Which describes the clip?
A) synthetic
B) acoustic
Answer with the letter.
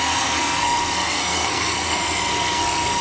A